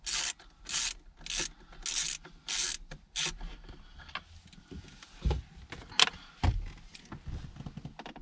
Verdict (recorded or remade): recorded